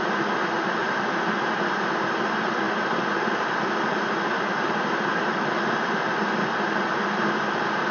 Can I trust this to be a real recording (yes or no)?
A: yes